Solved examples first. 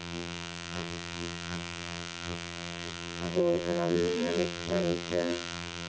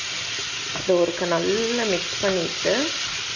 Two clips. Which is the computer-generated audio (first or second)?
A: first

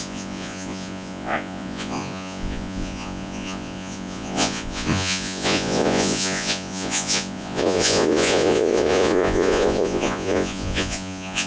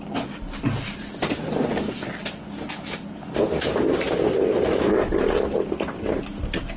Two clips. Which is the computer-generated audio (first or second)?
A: first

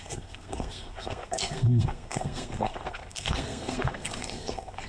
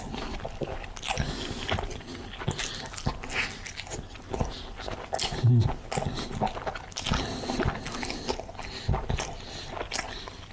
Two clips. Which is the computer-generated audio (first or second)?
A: first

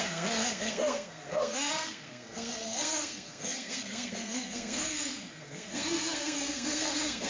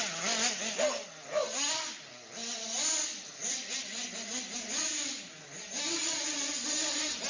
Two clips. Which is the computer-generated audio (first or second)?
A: first